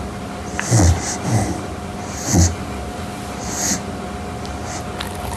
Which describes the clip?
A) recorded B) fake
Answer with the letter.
A